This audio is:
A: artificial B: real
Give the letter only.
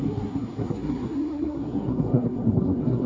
A